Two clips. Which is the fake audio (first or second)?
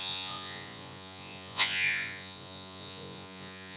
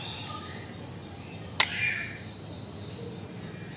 first